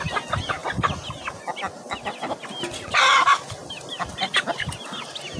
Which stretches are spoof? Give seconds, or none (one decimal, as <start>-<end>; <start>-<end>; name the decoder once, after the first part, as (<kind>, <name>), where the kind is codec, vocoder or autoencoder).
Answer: none